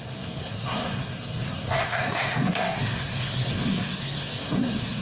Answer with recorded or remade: remade